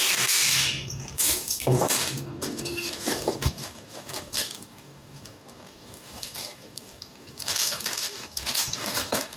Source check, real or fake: fake